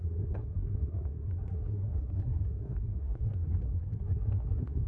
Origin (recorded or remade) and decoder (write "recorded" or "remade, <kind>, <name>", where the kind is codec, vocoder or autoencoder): remade, codec, SNAC